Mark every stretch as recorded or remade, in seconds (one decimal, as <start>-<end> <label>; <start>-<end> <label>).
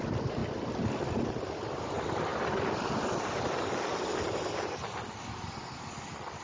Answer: 0.0-6.4 recorded